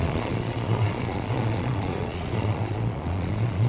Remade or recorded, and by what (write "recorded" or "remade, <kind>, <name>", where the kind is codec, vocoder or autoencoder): remade, vocoder, Vocos